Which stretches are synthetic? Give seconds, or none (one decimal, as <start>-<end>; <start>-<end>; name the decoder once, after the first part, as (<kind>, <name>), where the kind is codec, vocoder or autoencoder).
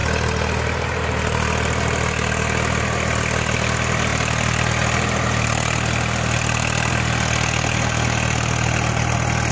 none